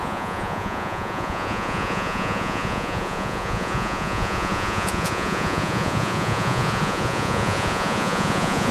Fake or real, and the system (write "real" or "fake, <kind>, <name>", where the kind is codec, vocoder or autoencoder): fake, vocoder, Vocos